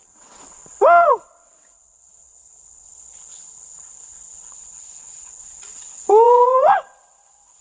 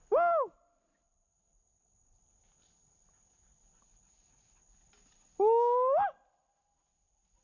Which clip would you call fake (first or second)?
first